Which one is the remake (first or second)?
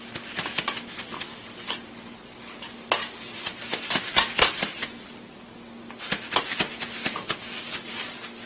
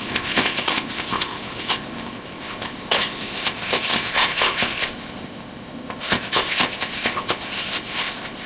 second